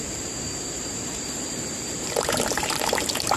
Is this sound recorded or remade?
remade